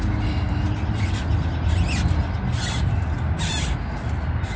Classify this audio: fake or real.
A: real